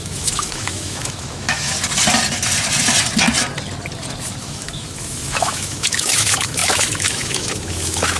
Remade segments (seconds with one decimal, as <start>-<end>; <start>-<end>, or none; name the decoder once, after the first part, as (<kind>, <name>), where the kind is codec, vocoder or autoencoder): 0.0-1.7 (autoencoder, DAC-VAE); 4.4-8.2